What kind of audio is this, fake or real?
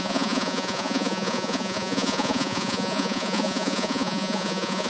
fake